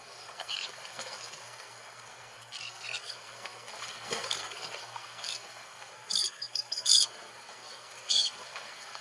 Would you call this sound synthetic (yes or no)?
yes